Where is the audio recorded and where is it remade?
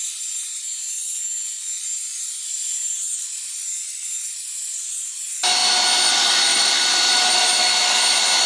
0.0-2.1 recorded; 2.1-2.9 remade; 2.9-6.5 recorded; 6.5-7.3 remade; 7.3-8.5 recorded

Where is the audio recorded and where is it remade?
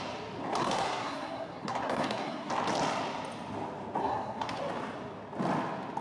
0.0-0.6 recorded; 0.6-2.5 remade; 2.5-4.0 recorded; 4.0-4.6 remade; 4.6-6.0 recorded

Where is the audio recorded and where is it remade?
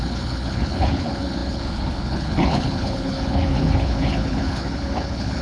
0.0-5.4 remade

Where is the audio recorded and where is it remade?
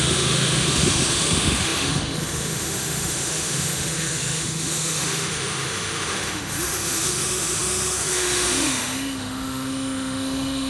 0.0-10.7 remade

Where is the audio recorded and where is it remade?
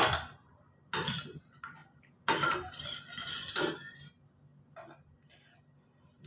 0.0-6.3 recorded